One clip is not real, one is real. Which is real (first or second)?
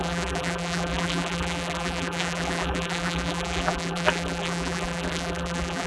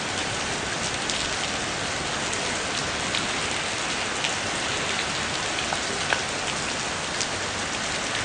second